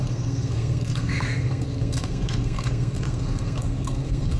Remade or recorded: remade